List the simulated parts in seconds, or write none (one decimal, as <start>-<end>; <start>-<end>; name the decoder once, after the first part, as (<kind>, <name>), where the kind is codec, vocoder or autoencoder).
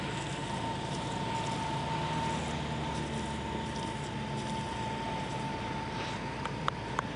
none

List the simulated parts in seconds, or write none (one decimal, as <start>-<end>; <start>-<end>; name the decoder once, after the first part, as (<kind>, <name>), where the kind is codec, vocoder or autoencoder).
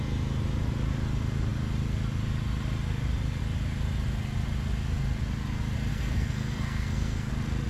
5.9-7.3 (codec, SNAC)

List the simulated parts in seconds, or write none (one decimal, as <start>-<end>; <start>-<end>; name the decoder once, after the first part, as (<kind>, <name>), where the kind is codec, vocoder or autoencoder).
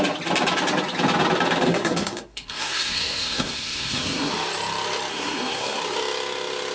1.7-4.3 (codec, SNAC); 5.1-5.8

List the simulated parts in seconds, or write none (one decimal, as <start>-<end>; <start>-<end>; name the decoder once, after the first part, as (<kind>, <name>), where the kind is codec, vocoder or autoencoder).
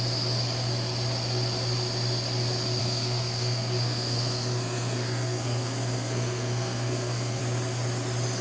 2.8-7.4 (codec, SNAC)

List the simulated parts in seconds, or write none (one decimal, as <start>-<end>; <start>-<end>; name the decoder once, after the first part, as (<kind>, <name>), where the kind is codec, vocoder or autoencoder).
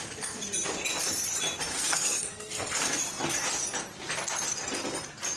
1.7-3.0 (codec, SNAC)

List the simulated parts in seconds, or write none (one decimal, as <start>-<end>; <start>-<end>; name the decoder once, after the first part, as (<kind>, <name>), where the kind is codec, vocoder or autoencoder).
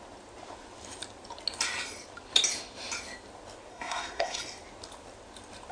3.7-4.4 (codec, SNAC)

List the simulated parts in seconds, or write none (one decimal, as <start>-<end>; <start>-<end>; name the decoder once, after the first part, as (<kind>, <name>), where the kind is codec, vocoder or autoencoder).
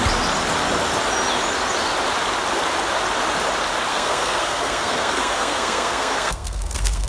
3.9-7.1 (codec, SNAC)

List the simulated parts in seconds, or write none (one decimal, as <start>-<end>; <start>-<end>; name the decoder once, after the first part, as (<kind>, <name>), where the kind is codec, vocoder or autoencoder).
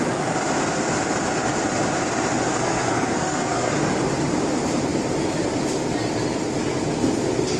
2.5-3.7 (codec, SNAC)